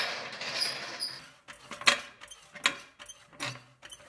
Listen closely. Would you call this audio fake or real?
real